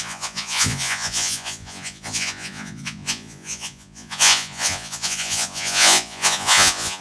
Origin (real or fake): fake